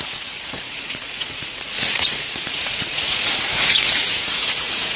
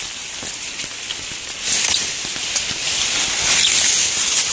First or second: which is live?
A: second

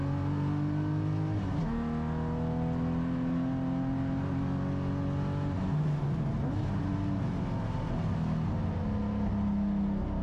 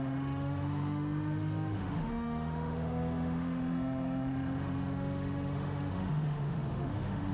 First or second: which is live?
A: first